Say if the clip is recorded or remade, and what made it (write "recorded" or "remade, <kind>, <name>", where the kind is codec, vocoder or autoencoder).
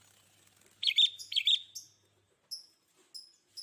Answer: recorded